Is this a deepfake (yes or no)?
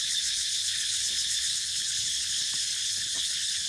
yes